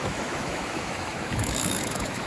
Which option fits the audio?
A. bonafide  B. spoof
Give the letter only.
B